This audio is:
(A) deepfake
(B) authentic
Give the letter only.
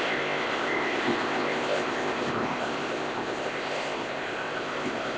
A